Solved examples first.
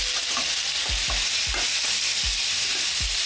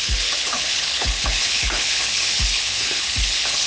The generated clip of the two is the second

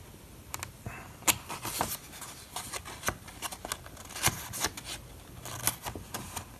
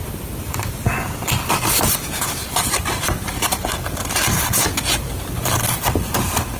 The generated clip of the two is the second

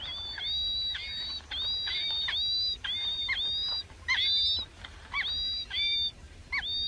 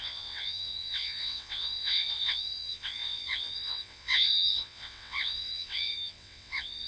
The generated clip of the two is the second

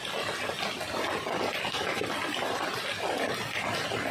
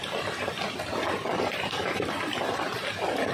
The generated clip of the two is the second